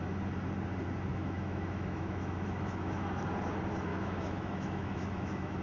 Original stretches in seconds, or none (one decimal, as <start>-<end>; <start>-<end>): 0.0-1.1; 3.2-3.9